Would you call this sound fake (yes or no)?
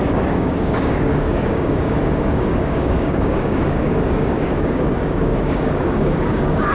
yes